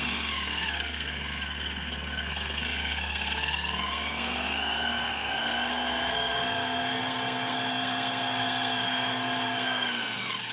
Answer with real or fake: fake